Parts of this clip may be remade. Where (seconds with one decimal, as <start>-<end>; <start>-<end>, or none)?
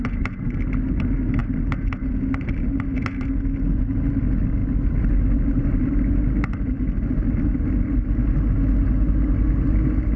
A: none